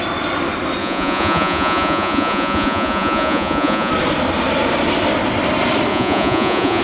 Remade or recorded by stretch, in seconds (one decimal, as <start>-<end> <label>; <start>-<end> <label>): 0.0-0.8 recorded; 0.8-3.9 remade; 3.9-5.9 recorded; 5.9-6.8 remade